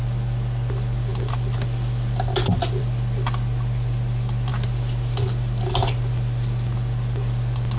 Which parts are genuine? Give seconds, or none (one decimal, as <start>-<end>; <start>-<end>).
0.0-7.8